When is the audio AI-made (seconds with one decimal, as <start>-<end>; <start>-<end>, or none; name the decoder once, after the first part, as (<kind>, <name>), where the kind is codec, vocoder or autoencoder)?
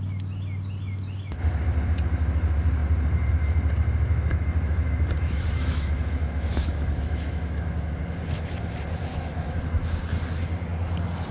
4.1-8.0 (autoencoder, DAC-VAE); 9.1-9.6